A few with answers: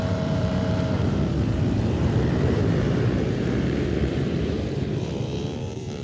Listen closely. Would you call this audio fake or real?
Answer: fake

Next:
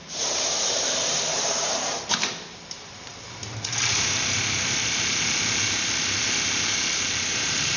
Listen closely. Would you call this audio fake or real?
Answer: fake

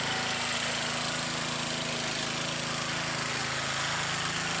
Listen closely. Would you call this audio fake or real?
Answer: real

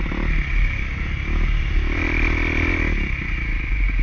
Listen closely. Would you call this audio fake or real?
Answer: real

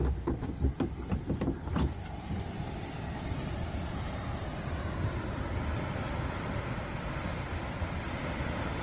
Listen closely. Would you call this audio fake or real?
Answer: fake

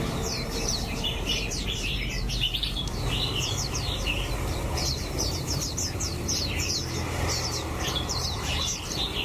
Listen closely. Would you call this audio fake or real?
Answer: fake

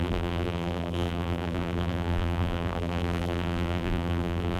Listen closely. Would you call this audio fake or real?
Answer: fake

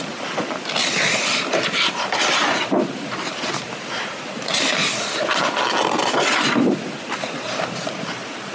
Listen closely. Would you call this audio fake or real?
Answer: real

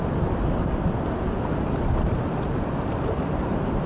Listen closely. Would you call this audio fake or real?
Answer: real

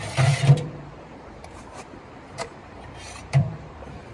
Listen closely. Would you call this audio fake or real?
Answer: fake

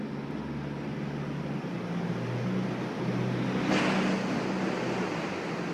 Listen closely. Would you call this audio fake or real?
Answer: real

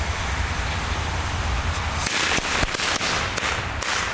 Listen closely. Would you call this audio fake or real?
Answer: fake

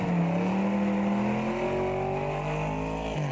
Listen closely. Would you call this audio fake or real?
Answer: real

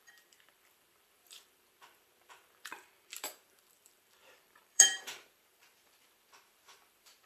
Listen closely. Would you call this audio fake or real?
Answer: fake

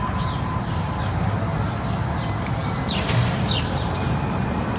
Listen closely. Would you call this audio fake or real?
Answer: fake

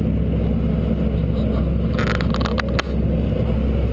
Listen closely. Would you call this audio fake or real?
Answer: real